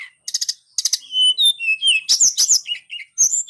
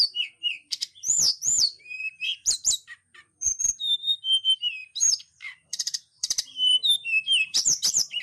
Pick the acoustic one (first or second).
first